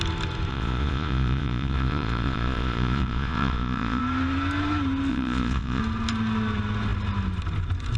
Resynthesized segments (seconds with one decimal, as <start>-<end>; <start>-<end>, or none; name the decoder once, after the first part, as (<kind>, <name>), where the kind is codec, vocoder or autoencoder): 0.5-4.0 (vocoder, Vocos); 5.1-5.8

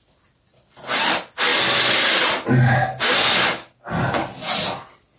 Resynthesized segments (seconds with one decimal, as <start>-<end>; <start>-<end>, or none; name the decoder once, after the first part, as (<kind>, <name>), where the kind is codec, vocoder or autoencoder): none

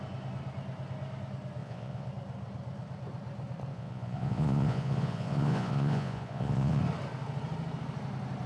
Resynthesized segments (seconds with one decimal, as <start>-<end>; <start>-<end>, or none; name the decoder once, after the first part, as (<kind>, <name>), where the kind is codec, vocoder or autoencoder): 1.6-2.1 (vocoder, Vocos); 3.7-6.8

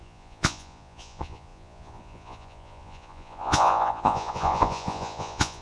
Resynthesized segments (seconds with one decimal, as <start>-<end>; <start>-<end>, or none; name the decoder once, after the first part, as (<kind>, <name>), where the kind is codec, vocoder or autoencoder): 0.0-5.6 (vocoder, Vocos)

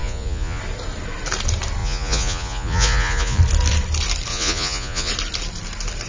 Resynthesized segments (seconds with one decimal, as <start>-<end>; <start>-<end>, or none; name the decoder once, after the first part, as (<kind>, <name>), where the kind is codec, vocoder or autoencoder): 0.0-0.6 (vocoder, Vocos); 1.8-3.4; 4.3-5.1

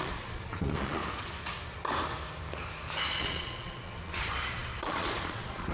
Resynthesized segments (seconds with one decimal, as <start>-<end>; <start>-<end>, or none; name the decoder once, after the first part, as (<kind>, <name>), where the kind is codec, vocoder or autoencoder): 0.0-1.0 (vocoder, Vocos); 3.1-5.7